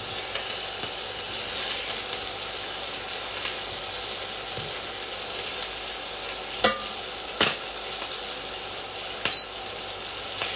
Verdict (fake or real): real